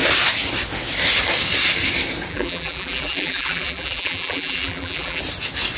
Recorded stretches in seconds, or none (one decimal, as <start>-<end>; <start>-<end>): 0.0-2.3; 5.2-5.8